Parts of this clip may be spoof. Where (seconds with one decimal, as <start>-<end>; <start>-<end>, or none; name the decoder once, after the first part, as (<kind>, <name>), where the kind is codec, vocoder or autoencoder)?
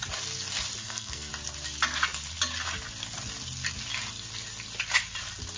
0.8-1.3 (codec, SNAC)